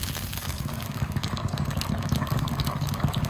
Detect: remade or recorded remade